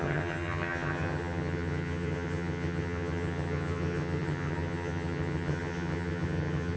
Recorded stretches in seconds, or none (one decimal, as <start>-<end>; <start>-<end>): none